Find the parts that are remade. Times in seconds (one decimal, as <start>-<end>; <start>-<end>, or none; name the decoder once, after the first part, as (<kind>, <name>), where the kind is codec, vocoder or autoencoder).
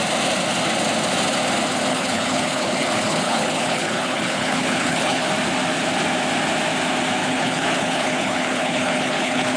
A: 1.9-5.3 (codec, HILCodec); 7.2-9.6